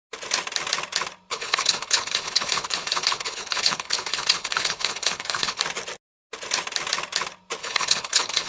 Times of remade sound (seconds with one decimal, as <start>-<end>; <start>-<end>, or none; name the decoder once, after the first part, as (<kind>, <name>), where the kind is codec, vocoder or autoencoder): 1.3-5.6 (codec, HILCodec); 7.6-8.5